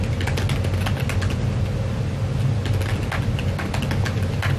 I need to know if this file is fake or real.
real